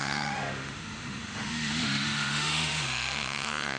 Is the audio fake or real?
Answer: fake